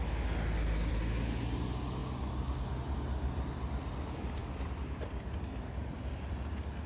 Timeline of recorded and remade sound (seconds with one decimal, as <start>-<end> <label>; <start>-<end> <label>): 0.0-6.9 recorded